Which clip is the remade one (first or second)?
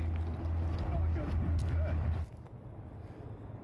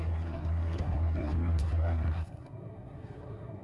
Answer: second